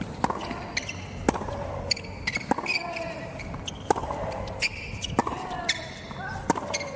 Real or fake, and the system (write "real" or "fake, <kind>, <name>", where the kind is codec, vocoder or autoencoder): real